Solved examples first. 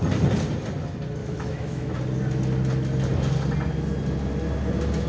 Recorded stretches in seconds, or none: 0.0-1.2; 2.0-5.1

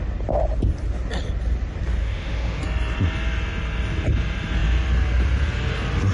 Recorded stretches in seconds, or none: 0.0-2.0; 2.6-6.1

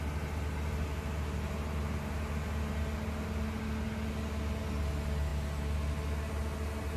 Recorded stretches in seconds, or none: 0.0-7.0

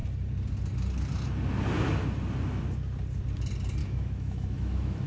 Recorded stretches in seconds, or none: 0.0-3.8

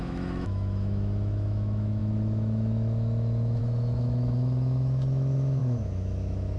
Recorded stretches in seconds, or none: none

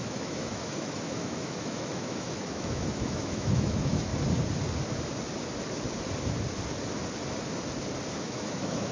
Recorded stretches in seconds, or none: 4.1-8.2